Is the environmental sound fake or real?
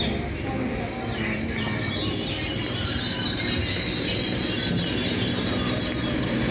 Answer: real